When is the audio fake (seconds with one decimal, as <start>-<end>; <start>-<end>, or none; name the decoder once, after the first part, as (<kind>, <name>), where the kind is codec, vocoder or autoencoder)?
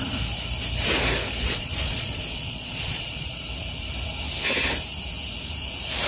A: 1.4-3.4 (vocoder, Vocos)